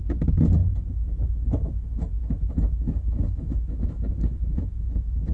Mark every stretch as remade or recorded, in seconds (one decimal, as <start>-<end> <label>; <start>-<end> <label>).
0.0-5.3 remade